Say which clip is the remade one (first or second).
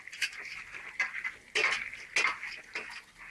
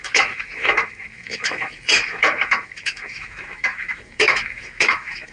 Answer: second